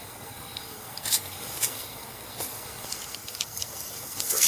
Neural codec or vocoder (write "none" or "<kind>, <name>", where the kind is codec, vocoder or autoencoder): codec, SNAC